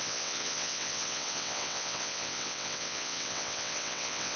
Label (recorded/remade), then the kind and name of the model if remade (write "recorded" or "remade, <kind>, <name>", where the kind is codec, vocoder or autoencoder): remade, vocoder, WaveNeXt